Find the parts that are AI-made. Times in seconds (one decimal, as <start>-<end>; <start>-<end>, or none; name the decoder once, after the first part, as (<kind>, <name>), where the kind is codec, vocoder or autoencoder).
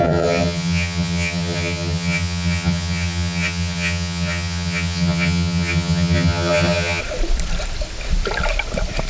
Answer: 0.0-7.0 (vocoder, HiFi-GAN)